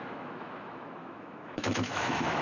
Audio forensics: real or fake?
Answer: fake